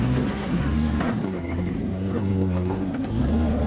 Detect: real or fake fake